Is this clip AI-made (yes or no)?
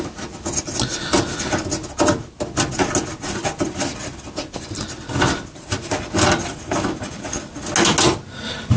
no